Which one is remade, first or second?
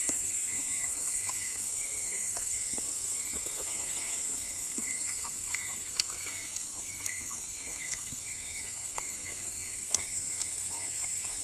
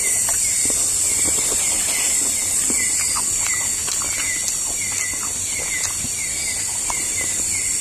first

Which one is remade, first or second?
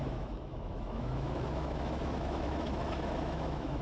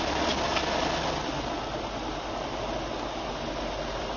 first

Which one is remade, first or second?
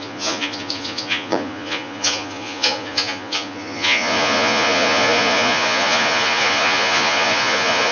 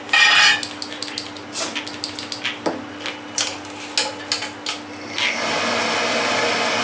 first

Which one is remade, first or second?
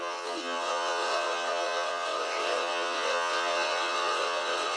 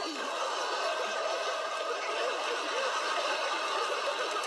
first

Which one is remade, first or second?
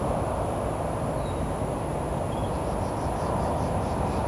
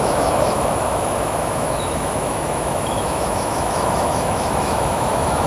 second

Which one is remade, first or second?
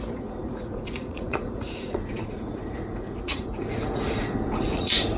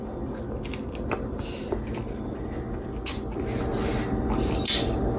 first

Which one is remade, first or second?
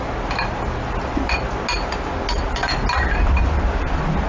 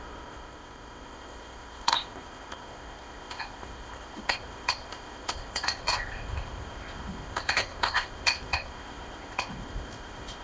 second